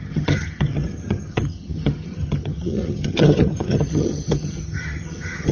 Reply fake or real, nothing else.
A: fake